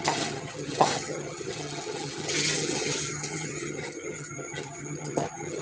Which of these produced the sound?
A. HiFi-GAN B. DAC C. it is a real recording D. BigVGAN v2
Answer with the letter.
A